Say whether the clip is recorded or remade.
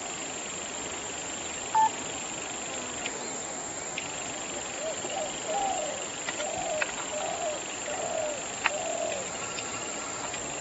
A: recorded